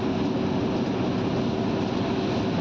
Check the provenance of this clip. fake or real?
real